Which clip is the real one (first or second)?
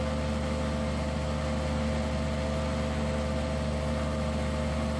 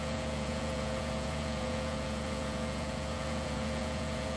first